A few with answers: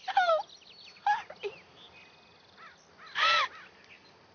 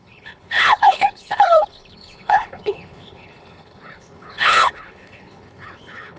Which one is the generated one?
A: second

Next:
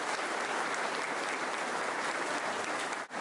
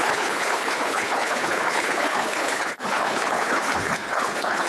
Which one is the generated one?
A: second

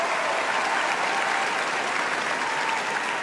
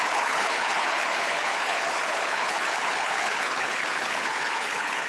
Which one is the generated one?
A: second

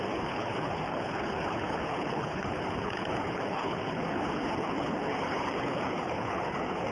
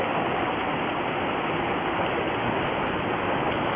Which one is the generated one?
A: first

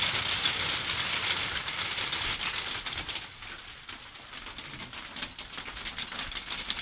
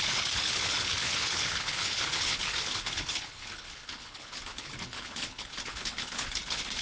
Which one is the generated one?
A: second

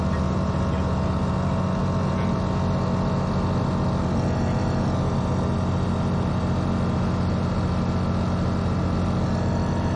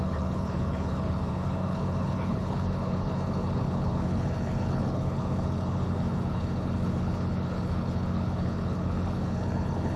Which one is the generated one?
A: second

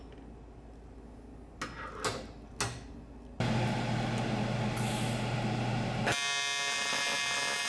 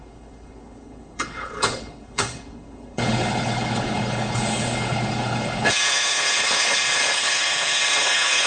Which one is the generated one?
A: second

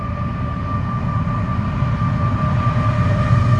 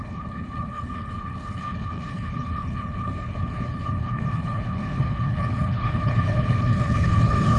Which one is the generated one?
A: second